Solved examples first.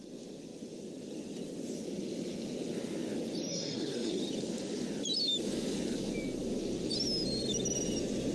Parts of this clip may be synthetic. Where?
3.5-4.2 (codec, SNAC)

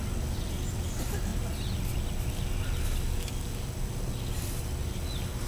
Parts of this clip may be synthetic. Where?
none

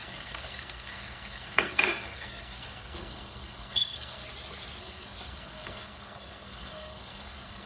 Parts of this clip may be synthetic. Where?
0.0-4.2 (codec, SNAC); 4.8-7.7

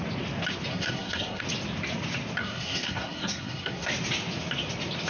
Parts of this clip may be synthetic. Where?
0.7-1.4 (codec, SNAC); 2.4-3.9

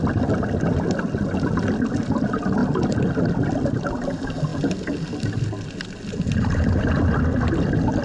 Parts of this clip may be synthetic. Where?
none